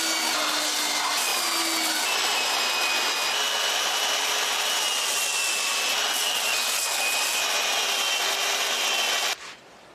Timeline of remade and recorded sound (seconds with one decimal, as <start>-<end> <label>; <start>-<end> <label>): 0.0-9.9 recorded